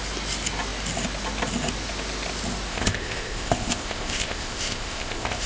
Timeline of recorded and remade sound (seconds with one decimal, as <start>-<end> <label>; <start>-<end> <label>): 0.0-2.7 recorded; 2.7-5.5 remade